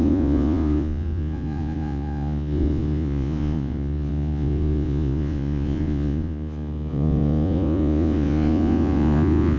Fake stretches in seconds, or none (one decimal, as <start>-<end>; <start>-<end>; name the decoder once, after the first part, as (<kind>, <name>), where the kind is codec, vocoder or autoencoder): 0.0-9.6 (vocoder, Vocos)